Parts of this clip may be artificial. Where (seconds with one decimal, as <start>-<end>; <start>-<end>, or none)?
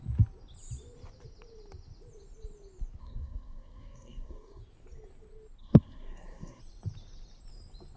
3.0-4.6; 5.6-6.6